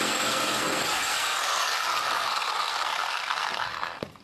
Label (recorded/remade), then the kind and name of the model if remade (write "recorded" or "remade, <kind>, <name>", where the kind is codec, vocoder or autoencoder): remade, codec, SNAC